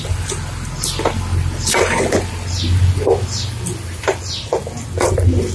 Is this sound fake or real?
real